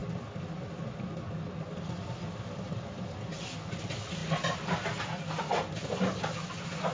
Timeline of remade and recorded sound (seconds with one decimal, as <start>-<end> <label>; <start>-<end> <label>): 0.0-6.9 recorded